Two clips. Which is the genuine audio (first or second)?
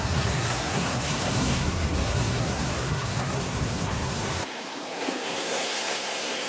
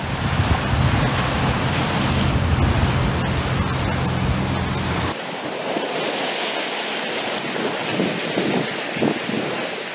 second